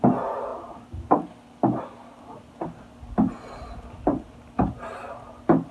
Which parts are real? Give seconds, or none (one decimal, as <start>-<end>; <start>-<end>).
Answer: 0.0-5.7